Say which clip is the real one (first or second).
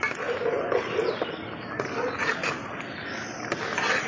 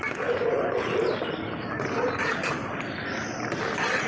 first